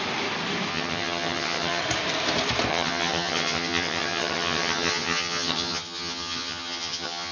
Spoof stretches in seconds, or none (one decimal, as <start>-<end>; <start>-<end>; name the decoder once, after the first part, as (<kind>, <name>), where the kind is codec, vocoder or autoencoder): 0.7-1.8 (vocoder, HiFi-GAN); 2.7-7.3